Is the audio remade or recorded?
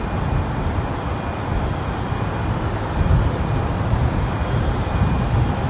recorded